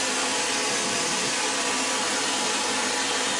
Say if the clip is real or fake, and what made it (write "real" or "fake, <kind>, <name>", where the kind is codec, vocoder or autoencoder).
real